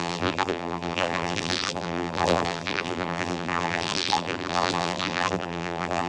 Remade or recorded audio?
remade